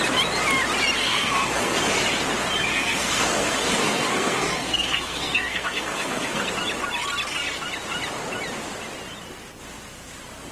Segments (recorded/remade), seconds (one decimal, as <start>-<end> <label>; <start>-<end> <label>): 0.0-1.0 recorded; 1.0-1.8 remade; 1.8-2.7 recorded; 2.7-6.5 remade; 6.5-10.5 recorded